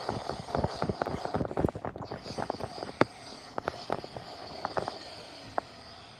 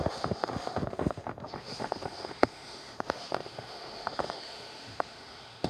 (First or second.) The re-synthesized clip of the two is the second